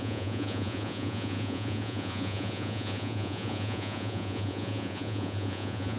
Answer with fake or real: fake